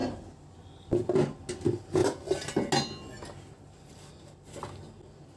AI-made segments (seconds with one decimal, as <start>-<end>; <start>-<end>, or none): none